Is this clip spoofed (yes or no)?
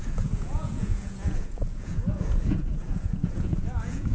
yes